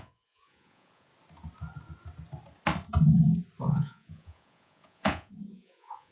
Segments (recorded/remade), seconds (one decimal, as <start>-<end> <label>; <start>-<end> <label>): 0.0-1.1 remade; 1.1-3.6 recorded; 3.6-6.1 remade